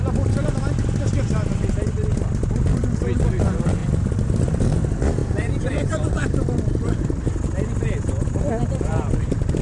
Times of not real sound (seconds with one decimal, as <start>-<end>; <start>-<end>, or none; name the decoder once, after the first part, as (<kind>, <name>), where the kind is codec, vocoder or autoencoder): 5.2-6.2 (vocoder, BigVGAN v2)